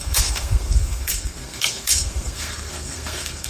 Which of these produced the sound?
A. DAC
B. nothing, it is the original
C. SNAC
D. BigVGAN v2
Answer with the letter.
C